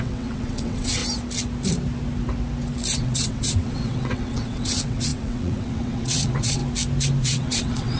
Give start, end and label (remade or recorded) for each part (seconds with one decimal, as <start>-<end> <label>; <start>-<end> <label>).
0.0-1.0 remade; 1.0-3.0 recorded; 3.0-6.6 remade; 6.6-7.2 recorded; 7.2-8.0 remade